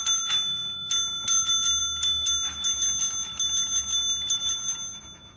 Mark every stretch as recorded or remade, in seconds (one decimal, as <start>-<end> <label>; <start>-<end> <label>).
0.0-5.4 recorded